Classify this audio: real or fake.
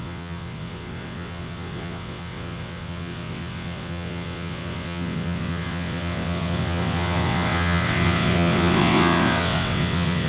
fake